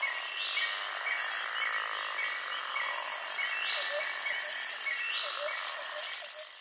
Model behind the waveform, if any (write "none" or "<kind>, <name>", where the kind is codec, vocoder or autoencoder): none